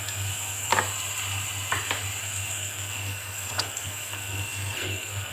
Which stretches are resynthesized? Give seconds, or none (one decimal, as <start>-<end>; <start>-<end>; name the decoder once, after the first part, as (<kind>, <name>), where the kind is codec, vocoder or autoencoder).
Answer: 0.0-0.7 (codec, SNAC); 2.2-5.3